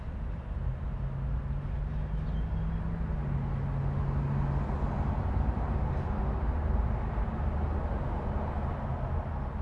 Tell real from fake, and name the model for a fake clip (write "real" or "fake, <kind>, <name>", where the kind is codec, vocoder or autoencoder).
real